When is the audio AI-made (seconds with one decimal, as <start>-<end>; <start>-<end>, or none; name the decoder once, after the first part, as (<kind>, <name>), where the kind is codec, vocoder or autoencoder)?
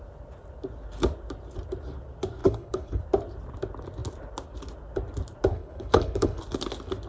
2.4-3.0 (codec, HILCodec); 5.5-6.4